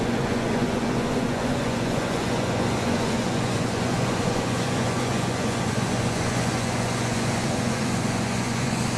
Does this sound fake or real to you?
fake